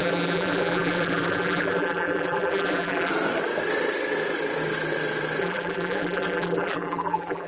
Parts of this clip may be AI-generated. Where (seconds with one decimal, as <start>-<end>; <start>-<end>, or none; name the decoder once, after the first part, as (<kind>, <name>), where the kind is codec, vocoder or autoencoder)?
0.0-3.1 (vocoder, BigVGAN v2); 5.4-7.5